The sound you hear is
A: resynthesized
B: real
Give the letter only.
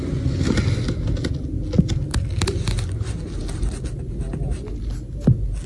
B